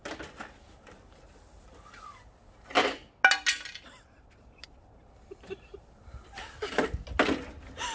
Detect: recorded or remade recorded